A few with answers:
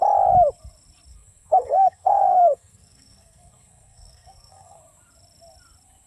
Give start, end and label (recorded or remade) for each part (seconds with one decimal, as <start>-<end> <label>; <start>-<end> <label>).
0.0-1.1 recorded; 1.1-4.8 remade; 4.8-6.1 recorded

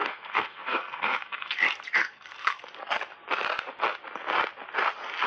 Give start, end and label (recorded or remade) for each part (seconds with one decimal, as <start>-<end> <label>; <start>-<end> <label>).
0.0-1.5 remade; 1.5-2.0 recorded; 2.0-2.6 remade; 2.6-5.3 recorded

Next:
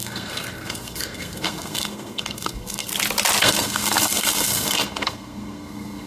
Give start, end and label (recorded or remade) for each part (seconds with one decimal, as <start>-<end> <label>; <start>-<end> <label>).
0.0-2.9 remade; 2.9-3.4 recorded; 3.4-6.1 remade

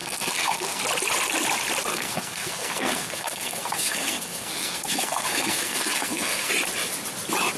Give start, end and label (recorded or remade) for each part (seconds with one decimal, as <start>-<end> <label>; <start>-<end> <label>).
0.0-0.8 remade; 0.8-1.9 recorded; 1.9-6.5 remade; 6.5-7.6 recorded